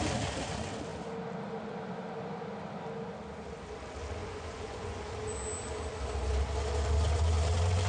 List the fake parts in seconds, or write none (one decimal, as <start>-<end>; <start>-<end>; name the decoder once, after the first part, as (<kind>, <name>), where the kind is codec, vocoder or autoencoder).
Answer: 4.2-5.0 (vocoder, Vocos)